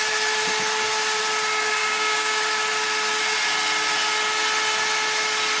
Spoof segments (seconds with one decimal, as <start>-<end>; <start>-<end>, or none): 1.8-2.4